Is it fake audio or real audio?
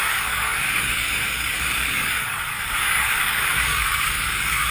fake